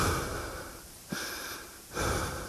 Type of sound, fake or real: fake